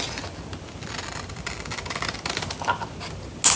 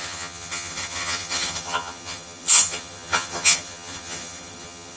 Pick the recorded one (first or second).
first